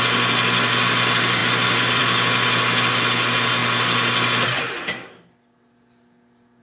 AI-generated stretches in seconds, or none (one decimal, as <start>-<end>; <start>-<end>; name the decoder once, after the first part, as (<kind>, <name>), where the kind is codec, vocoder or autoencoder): none